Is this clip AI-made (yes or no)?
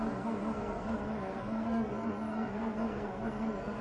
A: yes